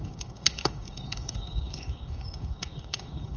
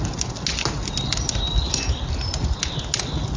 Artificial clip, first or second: first